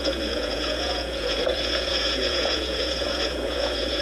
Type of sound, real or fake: fake